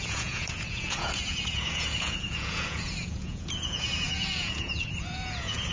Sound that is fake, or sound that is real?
fake